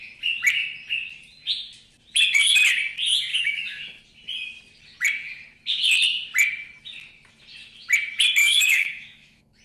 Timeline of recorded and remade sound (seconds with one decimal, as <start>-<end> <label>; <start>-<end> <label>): 0.0-3.3 recorded; 3.3-4.0 remade; 4.0-8.4 recorded; 8.4-9.6 remade